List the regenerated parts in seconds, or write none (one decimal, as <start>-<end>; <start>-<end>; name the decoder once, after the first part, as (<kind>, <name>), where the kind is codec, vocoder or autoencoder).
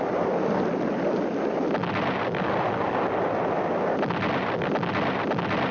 none